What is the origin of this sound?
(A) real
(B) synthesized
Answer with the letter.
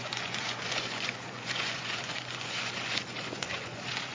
B